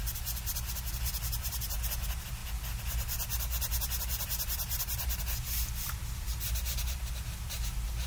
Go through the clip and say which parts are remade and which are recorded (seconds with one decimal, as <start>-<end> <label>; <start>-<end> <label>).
0.0-8.1 recorded